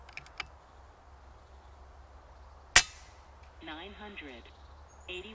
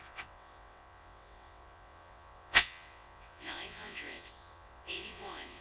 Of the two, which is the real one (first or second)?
first